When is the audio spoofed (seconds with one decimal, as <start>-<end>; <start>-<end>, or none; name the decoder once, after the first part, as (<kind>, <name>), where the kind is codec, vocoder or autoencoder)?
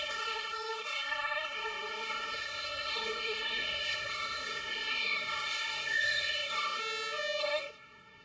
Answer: 0.0-6.8 (codec, SNAC); 7.4-8.2